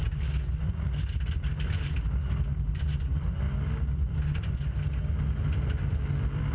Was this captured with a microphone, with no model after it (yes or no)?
yes